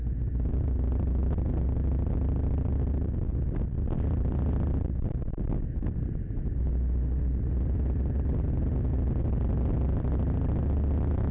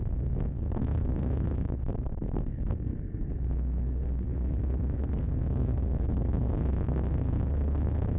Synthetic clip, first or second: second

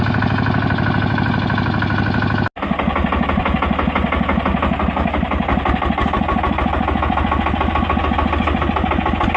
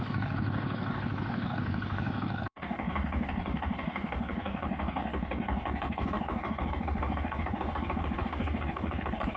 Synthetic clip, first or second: second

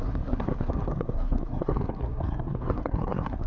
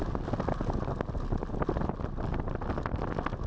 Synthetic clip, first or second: first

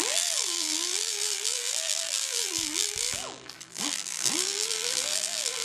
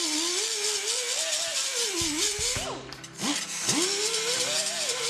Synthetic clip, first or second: first